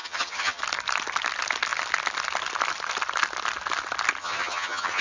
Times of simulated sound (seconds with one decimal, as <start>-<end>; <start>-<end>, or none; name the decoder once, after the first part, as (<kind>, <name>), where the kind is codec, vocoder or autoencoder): 0.0-0.6 (vocoder, HiFi-GAN); 4.2-5.0

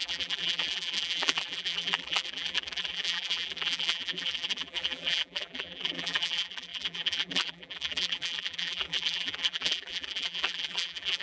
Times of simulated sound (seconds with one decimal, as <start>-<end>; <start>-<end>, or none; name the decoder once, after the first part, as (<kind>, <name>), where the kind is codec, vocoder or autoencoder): 0.0-11.2 (vocoder, BigVGAN v2)